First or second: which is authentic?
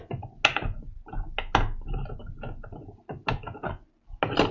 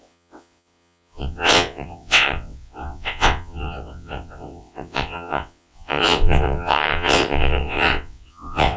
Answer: first